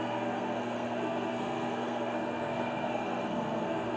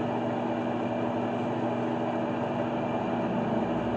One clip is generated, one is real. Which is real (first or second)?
second